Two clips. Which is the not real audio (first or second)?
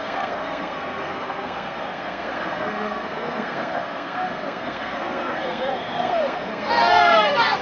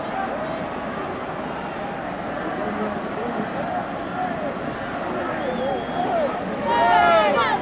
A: first